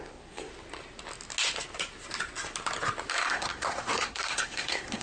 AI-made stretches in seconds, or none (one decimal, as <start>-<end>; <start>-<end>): 0.0-0.5; 3.1-5.0

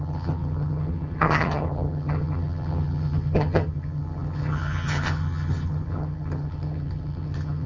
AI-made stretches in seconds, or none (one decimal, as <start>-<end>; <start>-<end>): 0.0-7.7

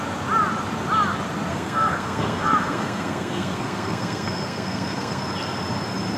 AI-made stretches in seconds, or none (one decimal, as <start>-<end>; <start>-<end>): 1.5-5.2

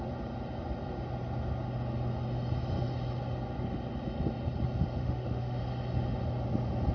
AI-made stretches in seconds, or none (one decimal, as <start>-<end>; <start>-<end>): 5.0-5.6

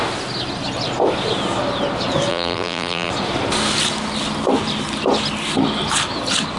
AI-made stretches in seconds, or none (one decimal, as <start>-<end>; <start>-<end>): 2.3-3.1

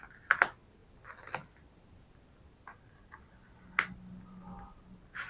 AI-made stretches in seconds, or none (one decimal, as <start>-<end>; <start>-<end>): none

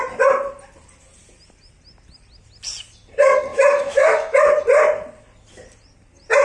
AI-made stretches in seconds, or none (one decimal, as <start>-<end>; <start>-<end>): 3.5-4.6

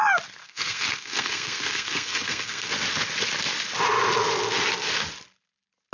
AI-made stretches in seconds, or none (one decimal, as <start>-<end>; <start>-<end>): 0.4-2.7